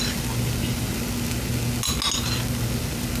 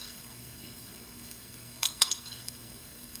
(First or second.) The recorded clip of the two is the first